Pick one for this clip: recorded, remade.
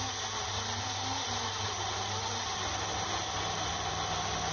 recorded